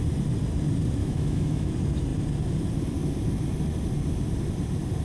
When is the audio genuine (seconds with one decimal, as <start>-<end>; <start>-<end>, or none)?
0.0-1.0; 1.7-5.0